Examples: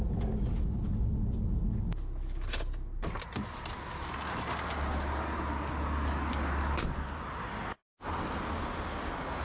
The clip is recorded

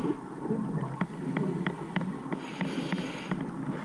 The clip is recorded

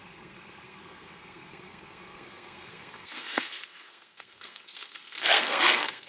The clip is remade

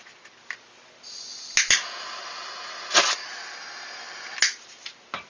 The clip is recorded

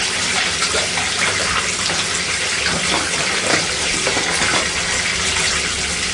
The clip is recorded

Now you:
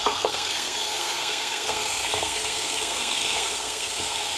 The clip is remade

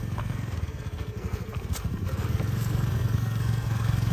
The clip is remade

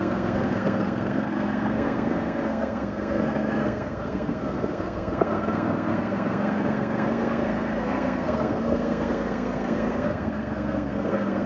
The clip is remade